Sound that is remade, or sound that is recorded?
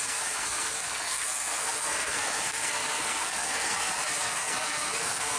remade